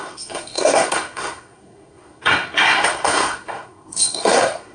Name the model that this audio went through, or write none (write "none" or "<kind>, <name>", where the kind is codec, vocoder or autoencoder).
codec, SNAC